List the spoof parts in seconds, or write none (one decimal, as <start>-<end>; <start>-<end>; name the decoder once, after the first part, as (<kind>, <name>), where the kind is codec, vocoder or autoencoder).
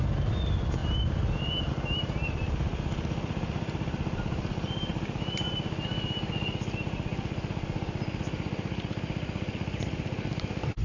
4.9-5.6 (vocoder, BigVGAN v2)